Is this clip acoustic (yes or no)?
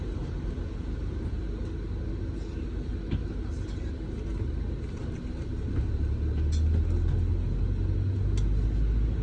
yes